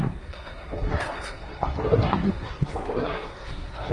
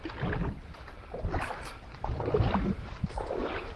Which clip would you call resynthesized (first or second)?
first